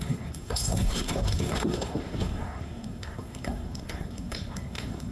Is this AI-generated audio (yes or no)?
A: yes